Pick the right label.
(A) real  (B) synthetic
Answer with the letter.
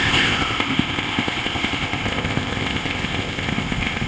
B